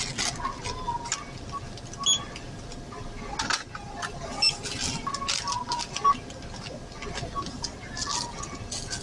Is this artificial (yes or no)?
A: no